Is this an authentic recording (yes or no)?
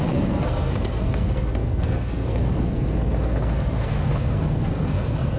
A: no